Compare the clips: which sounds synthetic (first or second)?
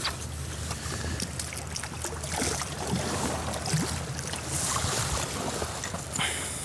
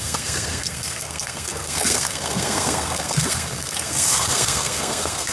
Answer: second